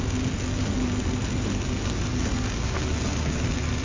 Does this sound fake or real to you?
real